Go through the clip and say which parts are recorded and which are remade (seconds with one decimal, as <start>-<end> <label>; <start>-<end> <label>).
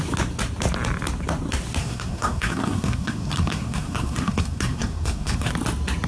0.0-1.8 recorded; 1.8-5.5 remade; 5.5-6.1 recorded